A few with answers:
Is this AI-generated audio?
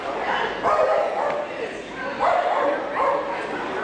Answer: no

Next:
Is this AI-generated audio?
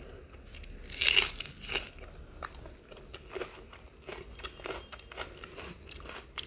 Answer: no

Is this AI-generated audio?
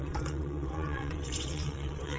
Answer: yes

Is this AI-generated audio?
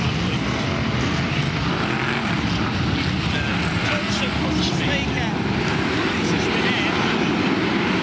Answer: no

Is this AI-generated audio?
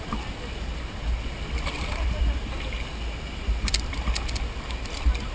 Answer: no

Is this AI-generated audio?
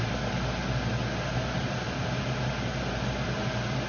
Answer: no